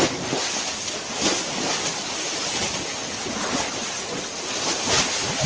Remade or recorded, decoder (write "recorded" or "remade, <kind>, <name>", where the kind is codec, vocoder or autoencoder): recorded